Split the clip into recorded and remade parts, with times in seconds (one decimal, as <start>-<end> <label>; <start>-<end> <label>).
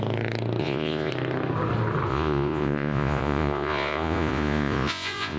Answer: 0.0-0.6 recorded; 0.6-1.1 remade; 1.1-2.1 recorded; 2.1-5.4 remade